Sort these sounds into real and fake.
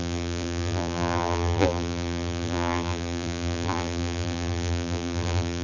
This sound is fake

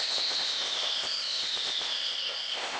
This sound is fake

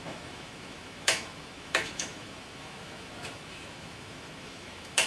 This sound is fake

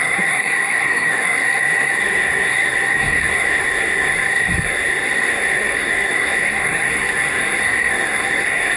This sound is fake